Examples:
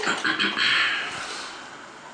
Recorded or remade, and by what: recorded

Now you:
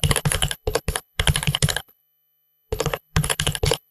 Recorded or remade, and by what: remade, codec, HILCodec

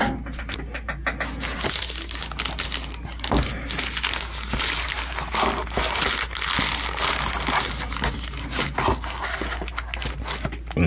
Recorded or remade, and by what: recorded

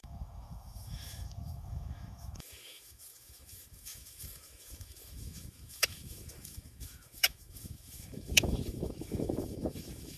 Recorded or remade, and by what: remade, autoencoder, DAC-VAE